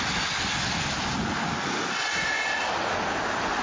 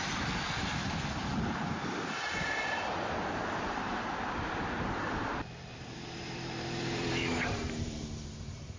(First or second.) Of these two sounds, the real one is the first